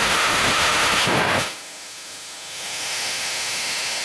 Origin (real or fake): fake